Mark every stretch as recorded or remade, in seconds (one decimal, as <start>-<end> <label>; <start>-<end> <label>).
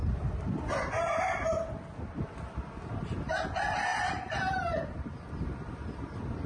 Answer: 0.0-3.9 recorded; 3.9-5.3 remade; 5.3-6.5 recorded